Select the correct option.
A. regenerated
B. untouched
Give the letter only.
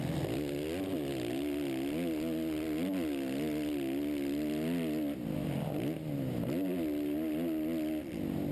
B